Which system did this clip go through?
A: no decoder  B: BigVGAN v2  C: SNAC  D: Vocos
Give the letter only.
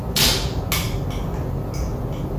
A